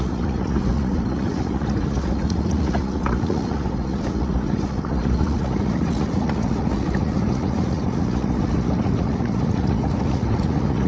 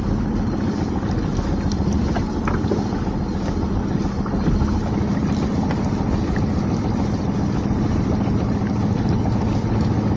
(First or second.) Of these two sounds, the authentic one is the second